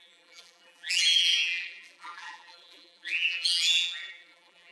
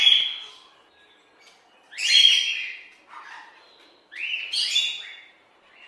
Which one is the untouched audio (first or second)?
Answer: second